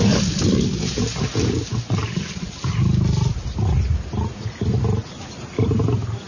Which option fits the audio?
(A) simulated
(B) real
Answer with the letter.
B